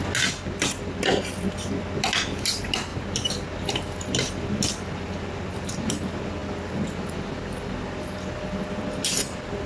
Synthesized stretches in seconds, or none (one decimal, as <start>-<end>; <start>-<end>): none